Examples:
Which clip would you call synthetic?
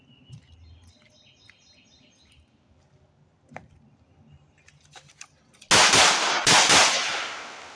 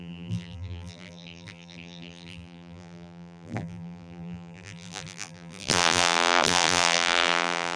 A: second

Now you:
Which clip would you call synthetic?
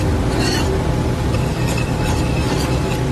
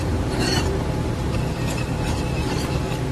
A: second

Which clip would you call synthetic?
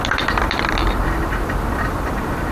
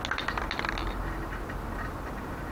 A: first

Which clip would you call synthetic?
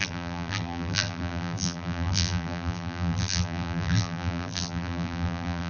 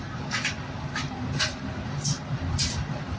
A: first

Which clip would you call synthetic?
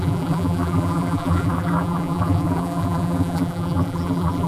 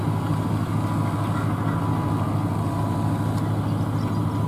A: first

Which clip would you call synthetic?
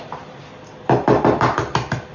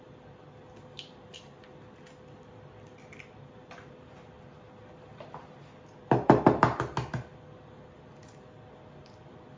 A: first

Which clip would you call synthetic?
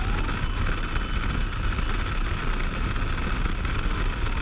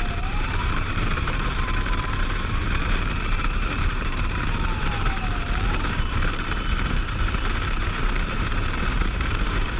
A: second